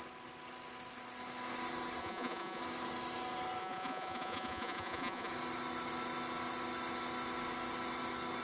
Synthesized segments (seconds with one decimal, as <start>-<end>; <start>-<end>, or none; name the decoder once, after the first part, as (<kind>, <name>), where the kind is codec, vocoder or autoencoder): 2.0-2.6 (vocoder, Vocos); 3.6-5.3